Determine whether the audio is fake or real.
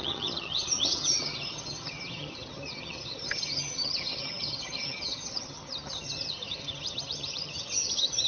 fake